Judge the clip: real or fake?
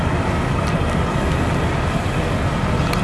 real